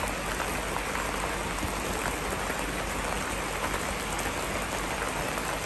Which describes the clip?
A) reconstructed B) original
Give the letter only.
B